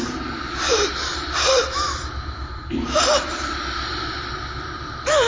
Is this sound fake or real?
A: fake